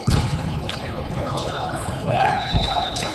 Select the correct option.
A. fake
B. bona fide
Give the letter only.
A